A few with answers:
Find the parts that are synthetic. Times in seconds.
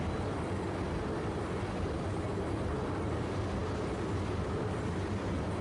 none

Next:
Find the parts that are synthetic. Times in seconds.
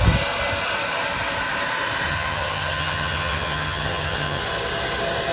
2.1-4.4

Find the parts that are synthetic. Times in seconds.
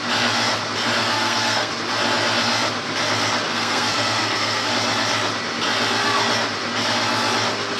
1.0-1.7; 3.5-4.7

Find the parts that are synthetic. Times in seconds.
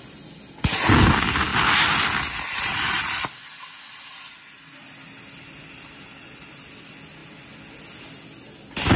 none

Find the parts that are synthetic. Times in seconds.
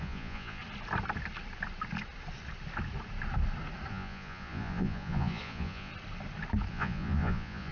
0.0-0.6; 3.9-5.9; 6.7-7.7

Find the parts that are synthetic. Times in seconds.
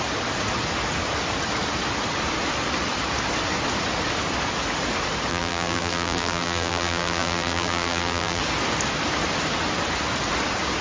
5.3-8.4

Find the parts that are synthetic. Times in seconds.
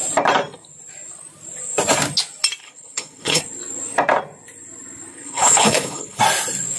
2.6-3.4; 5.1-6.2